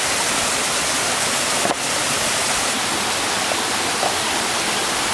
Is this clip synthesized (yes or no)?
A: no